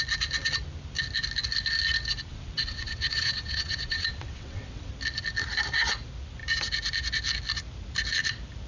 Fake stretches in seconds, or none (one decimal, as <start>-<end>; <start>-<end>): 2.3-4.9